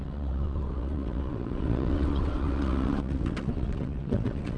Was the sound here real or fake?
fake